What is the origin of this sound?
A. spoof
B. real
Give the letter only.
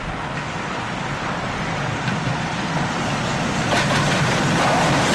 B